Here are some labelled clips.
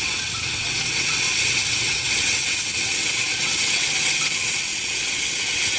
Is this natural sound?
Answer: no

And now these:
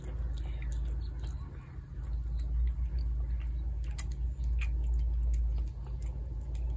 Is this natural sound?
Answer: yes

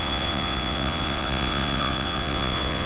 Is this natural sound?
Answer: no